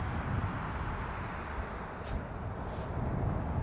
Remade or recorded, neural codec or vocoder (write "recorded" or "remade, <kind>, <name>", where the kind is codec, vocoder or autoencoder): recorded